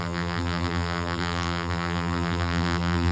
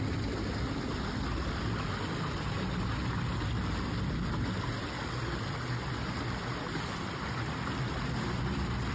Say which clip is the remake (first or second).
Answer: first